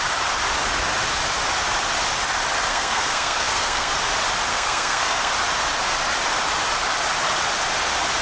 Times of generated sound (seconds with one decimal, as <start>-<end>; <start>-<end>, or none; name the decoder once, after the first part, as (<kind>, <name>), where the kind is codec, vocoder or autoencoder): 2.7-3.9 (codec, SNAC); 4.5-5.3